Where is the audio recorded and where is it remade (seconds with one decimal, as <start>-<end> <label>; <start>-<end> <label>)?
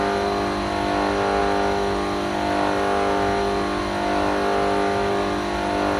0.0-6.0 recorded